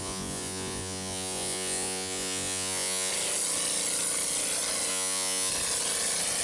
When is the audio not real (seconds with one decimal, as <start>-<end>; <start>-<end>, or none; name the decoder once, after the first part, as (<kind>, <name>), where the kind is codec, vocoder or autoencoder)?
0.0-3.1 (vocoder, Vocos); 4.9-5.5